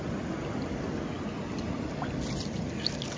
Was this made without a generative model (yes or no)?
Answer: yes